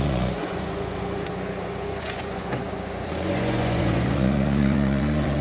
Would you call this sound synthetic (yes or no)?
yes